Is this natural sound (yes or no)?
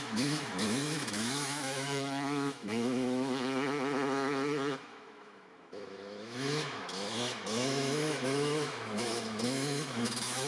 no